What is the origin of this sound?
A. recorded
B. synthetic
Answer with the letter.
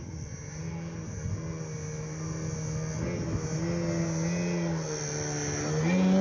A